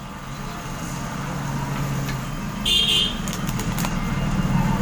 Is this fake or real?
real